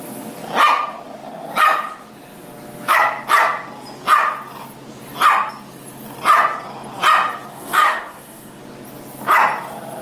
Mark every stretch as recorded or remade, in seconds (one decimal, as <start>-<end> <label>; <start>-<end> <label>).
0.0-7.5 recorded; 7.5-8.6 remade; 8.6-10.0 recorded